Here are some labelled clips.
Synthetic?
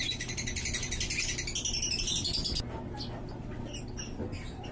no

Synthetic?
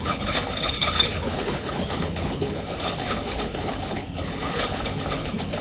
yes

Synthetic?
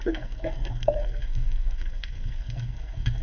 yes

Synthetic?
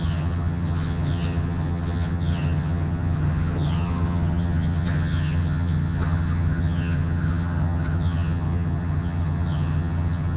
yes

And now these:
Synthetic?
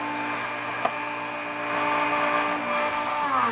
no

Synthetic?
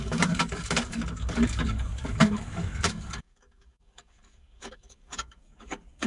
yes